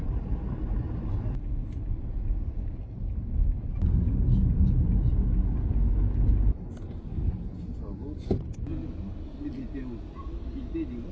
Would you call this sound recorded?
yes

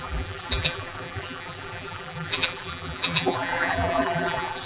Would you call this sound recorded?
no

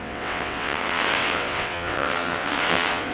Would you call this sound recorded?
no